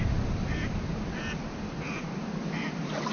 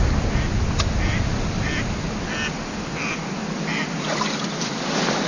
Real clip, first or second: second